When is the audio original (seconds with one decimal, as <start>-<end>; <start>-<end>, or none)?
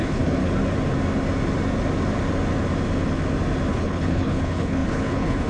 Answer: 0.4-3.7